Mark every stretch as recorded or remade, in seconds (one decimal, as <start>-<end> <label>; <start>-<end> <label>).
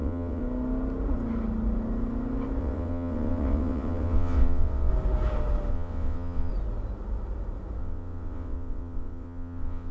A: 0.0-0.4 remade; 0.4-2.6 recorded; 2.6-4.9 remade; 4.9-5.7 recorded; 5.7-6.5 remade; 6.5-7.8 recorded; 7.8-9.9 remade